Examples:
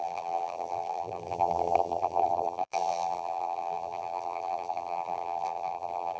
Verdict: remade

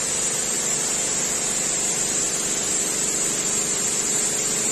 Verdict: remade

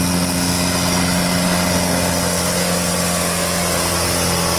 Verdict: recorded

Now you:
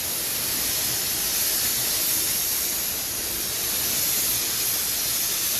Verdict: recorded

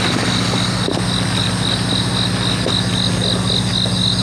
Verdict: recorded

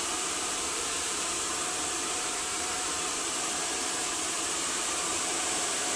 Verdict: remade